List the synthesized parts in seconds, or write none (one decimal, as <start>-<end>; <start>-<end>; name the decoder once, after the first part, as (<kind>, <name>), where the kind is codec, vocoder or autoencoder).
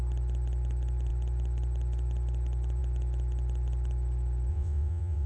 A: 4.5-5.3 (vocoder, WaveNeXt)